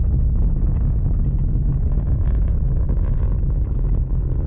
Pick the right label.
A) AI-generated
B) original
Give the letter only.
B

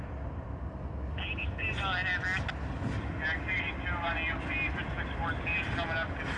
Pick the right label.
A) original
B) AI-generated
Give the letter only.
A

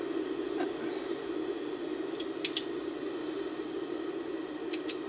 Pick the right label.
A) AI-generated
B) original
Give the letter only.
B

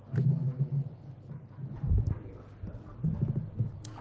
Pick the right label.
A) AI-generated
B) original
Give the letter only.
B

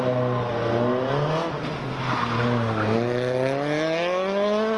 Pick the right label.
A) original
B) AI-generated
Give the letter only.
A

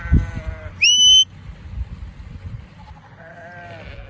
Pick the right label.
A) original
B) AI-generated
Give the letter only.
A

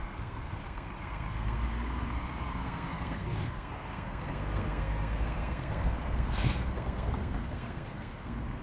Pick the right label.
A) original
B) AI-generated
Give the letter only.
B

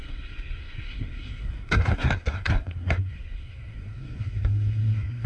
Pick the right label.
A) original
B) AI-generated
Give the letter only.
B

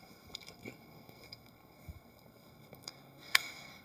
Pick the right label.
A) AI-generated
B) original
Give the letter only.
A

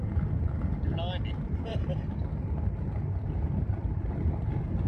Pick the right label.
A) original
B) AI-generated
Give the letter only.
A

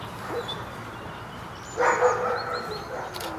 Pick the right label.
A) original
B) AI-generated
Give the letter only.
A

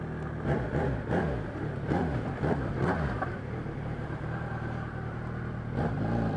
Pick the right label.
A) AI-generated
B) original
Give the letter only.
B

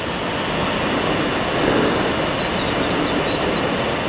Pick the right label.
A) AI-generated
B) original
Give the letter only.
B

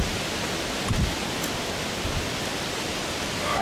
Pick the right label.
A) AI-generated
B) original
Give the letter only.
B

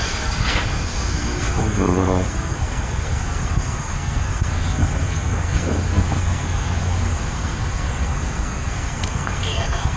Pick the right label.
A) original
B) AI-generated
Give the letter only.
B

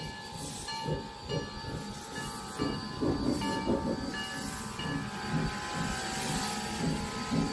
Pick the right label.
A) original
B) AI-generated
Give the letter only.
A